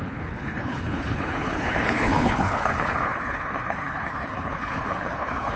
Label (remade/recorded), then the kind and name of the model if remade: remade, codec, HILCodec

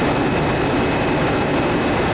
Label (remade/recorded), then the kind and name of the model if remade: recorded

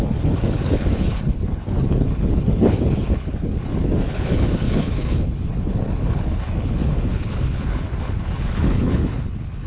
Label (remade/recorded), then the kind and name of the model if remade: remade, codec, HILCodec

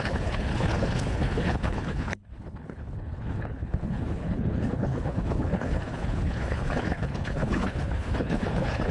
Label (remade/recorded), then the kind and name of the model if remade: remade, codec, HILCodec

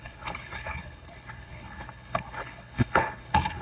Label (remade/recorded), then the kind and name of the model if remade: remade, codec, HILCodec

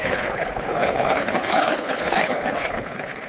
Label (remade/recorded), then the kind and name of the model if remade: remade, codec, HILCodec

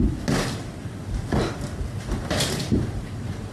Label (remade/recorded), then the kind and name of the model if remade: recorded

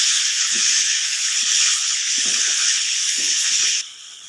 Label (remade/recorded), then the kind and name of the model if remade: remade, codec, HILCodec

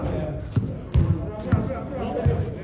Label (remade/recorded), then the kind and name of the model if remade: recorded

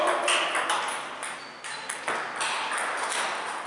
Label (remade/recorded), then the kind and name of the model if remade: recorded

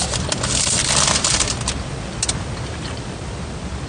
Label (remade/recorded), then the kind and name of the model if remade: recorded